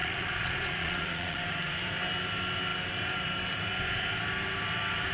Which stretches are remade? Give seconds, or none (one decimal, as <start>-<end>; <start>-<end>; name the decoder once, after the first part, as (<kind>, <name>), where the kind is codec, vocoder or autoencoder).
0.0-1.4 (vocoder, Vocos)